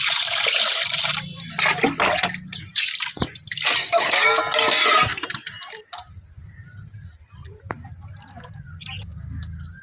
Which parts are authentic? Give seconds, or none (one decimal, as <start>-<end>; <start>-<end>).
0.0-3.8; 4.4-9.8